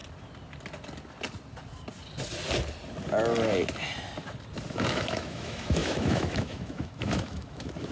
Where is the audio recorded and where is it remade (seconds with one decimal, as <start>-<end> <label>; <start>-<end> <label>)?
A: 0.0-4.7 recorded; 4.7-7.9 remade